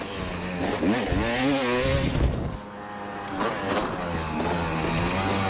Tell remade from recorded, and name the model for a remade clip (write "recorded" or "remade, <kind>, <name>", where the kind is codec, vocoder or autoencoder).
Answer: recorded